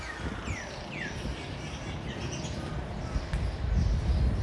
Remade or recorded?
recorded